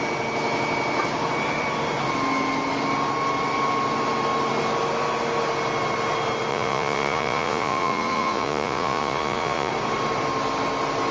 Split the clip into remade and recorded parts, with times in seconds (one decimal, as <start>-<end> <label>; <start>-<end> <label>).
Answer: 0.0-6.5 recorded; 6.5-9.7 remade; 9.7-11.1 recorded